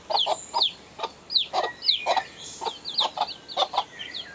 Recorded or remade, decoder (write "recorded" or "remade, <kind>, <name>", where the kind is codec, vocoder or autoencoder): recorded